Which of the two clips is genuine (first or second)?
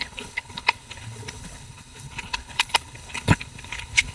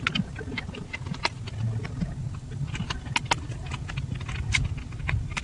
second